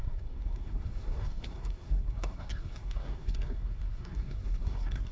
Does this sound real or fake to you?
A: fake